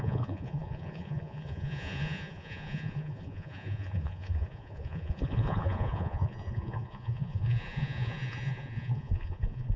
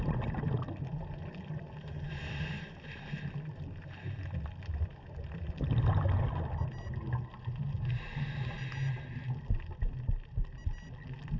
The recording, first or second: second